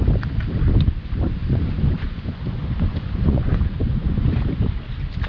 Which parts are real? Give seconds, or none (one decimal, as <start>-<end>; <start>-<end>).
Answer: 0.0-1.4; 4.5-5.3